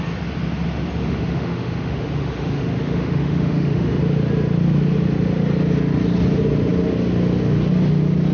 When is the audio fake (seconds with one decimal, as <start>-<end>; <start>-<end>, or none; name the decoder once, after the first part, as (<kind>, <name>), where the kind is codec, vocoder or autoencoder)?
1.0-4.0 (autoencoder, DAC-VAE)